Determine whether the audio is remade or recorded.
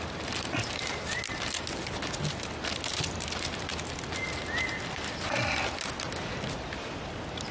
recorded